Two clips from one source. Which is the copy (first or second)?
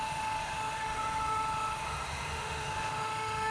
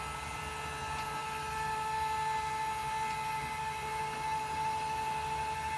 first